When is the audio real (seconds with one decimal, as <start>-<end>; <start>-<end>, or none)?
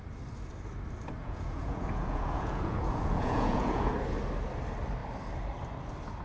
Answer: 0.0-1.2; 3.9-6.2